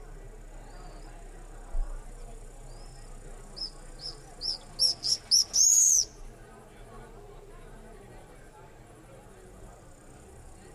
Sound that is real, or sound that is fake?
real